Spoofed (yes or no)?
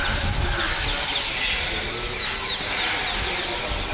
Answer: no